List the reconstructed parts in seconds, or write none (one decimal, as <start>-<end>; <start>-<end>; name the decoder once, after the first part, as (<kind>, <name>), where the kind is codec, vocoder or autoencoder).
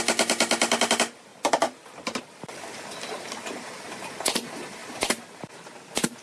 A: 1.3-2.2 (vocoder, BigVGAN v2); 4.8-5.5